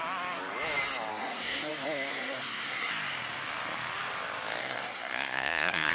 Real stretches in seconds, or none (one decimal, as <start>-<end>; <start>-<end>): 0.0-1.1; 1.7-2.1; 2.9-4.6